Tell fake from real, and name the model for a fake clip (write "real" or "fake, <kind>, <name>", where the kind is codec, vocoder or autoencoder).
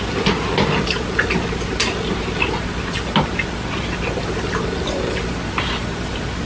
real